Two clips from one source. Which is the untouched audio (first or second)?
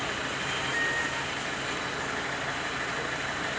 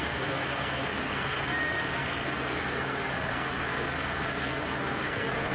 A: first